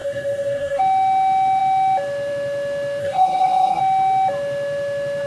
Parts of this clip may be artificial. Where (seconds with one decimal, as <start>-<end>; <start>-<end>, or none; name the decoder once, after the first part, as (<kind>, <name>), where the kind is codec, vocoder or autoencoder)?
0.0-0.8 (codec, SNAC); 3.0-3.8